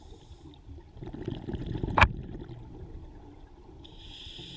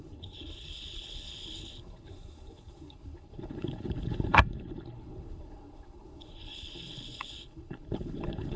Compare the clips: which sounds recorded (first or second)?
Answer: first